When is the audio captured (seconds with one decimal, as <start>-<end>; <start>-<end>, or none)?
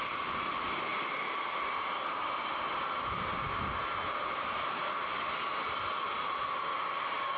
0.0-7.4